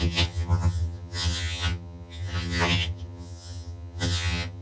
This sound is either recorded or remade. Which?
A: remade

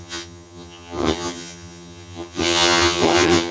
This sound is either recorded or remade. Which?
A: remade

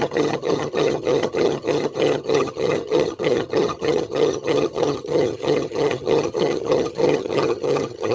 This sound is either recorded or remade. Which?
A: remade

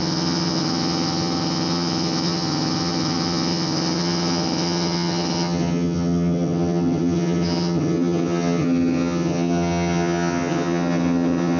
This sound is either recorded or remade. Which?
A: remade